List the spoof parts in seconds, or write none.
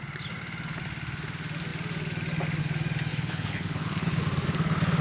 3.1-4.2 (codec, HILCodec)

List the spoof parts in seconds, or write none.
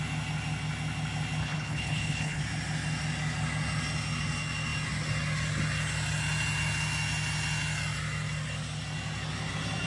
1.4-2.4 (codec, HILCodec)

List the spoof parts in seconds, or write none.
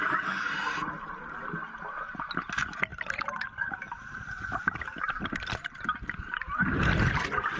none